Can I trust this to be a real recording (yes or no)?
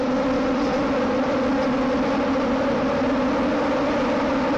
yes